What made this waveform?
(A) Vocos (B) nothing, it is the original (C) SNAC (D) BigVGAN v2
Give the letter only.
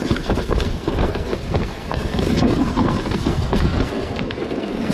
C